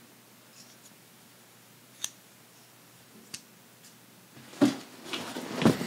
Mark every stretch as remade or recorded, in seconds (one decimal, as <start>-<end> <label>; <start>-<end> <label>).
0.0-0.5 recorded; 0.5-3.2 remade; 3.2-5.9 recorded